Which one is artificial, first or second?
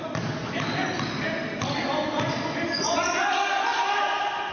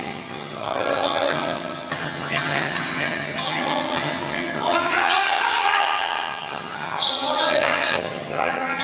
second